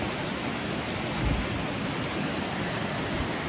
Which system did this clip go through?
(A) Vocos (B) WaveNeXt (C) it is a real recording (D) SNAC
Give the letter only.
C